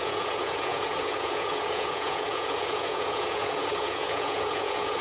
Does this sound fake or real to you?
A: fake